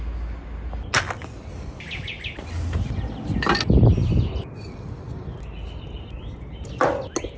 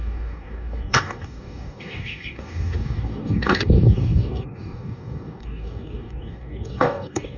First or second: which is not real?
second